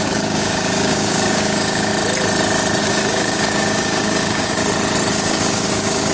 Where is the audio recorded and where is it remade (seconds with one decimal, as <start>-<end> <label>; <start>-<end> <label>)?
0.0-1.9 remade; 1.9-2.8 recorded; 2.8-4.6 remade; 4.6-5.1 recorded; 5.1-6.1 remade